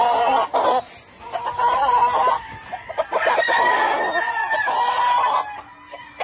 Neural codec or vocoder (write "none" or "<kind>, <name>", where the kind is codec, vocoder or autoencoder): none